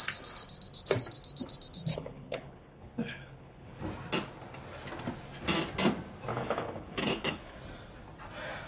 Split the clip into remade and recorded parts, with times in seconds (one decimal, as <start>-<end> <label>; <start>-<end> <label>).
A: 0.0-1.9 recorded; 1.9-3.8 remade; 3.8-6.3 recorded; 6.3-7.6 remade; 7.6-8.7 recorded